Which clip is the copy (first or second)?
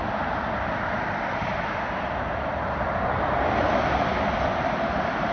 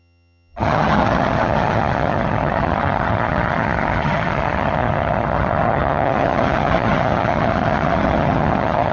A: second